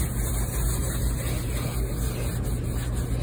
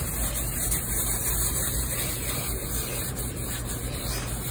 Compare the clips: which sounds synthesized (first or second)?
second